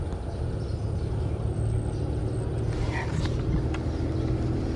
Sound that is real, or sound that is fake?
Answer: real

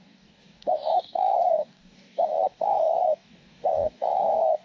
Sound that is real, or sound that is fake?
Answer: fake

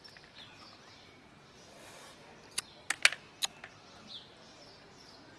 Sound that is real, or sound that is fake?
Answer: real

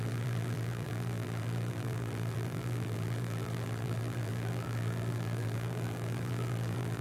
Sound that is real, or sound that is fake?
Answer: fake